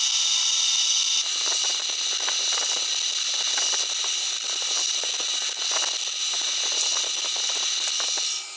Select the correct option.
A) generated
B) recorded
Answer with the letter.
B